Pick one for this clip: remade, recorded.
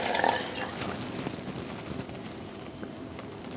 recorded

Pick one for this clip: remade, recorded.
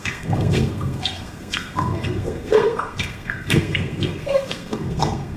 remade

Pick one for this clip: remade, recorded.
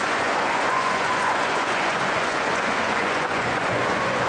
remade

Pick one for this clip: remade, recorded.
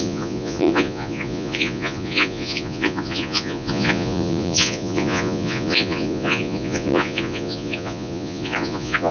remade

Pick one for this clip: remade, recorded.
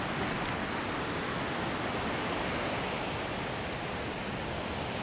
recorded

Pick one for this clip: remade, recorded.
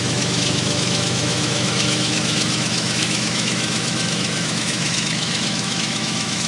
remade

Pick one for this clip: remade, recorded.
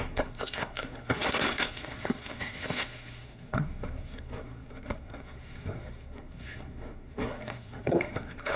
remade